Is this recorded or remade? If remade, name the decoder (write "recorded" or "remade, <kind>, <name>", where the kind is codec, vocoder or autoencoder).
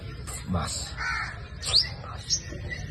recorded